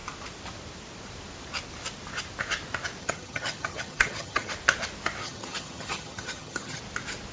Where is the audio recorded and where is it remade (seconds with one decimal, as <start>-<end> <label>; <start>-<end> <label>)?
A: 0.0-3.0 recorded; 3.0-4.5 remade; 4.5-5.2 recorded; 5.2-6.8 remade; 6.8-7.3 recorded